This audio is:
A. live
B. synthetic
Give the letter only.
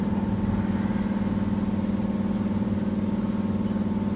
A